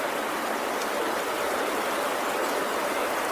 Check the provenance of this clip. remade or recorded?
remade